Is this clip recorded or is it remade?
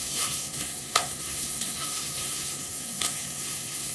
remade